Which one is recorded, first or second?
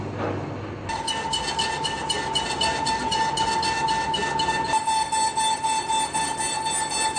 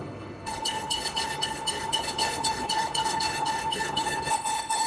first